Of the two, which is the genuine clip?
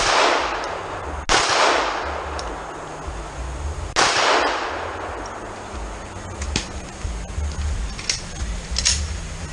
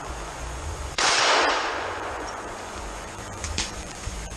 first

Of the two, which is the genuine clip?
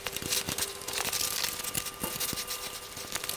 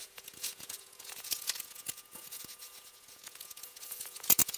first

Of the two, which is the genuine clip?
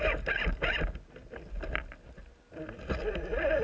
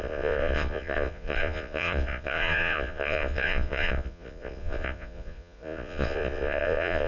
first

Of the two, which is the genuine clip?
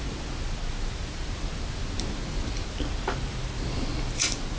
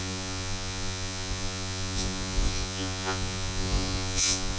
first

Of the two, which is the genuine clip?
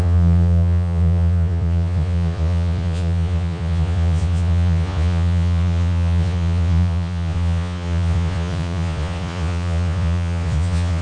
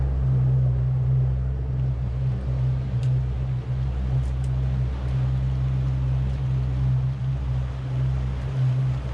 second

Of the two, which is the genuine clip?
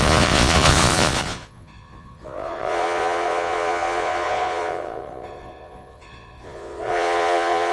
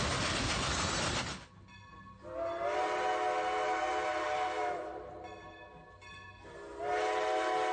second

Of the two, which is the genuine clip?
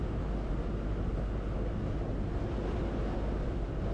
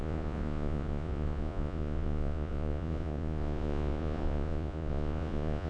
first